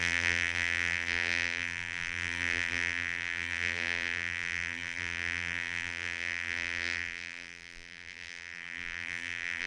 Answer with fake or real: fake